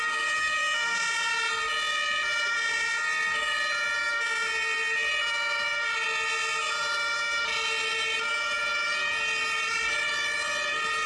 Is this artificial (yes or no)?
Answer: no